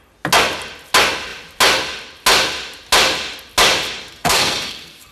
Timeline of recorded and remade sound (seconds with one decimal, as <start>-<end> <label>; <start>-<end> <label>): 0.0-4.1 recorded; 4.1-5.1 remade